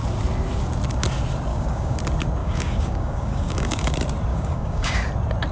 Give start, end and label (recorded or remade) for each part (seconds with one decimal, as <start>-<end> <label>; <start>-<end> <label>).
0.0-1.5 recorded; 1.5-2.0 remade; 2.0-2.4 recorded; 2.4-3.9 remade; 3.9-4.3 recorded; 4.3-5.0 remade; 5.0-5.5 recorded